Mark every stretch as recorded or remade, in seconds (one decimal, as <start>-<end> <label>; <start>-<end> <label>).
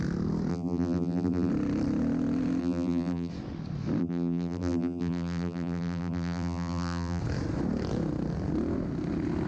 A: 0.0-0.5 recorded; 0.5-1.5 remade; 1.5-2.6 recorded; 2.6-3.3 remade; 3.3-4.0 recorded; 4.0-7.2 remade; 7.2-9.5 recorded